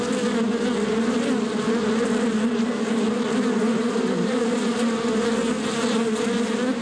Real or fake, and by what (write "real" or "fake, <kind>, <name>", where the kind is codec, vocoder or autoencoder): real